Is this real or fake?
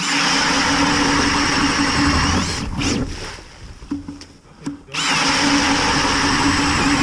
real